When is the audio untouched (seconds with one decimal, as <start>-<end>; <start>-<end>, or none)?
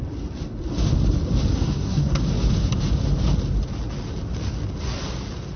0.0-1.5; 2.2-5.6